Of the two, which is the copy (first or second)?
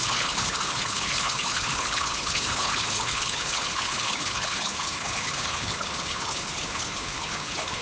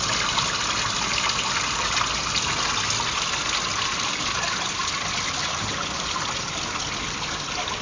first